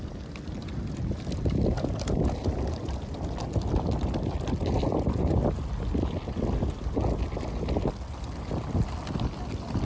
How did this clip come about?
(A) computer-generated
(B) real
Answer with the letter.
B